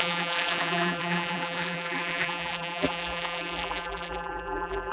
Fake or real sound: fake